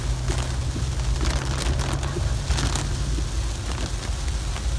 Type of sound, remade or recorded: recorded